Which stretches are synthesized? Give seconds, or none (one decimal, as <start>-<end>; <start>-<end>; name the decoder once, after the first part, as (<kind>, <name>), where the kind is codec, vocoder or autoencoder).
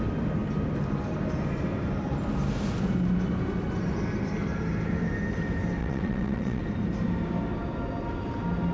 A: 5.8-6.6 (vocoder, WaveNeXt)